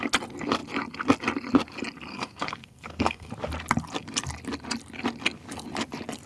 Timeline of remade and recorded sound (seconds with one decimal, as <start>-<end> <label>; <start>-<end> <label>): 0.0-2.1 recorded; 2.1-3.3 remade; 3.3-6.3 recorded